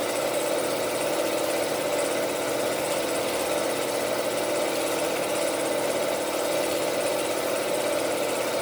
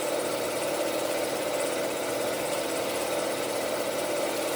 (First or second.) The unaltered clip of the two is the first